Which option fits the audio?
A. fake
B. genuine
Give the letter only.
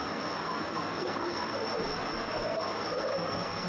A